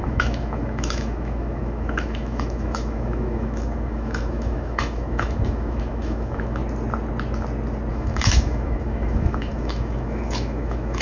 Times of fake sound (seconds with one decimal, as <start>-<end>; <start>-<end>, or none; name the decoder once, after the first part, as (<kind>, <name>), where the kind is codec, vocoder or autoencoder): 0.0-6.6 (autoencoder, DAC-VAE); 7.9-11.0